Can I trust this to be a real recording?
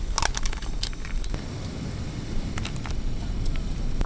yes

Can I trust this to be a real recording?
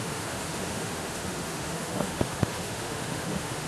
no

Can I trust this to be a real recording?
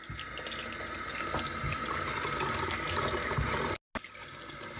yes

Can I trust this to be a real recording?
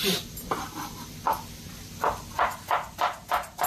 yes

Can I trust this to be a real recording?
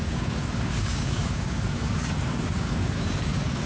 no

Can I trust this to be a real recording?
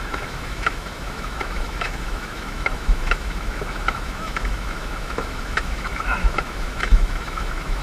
no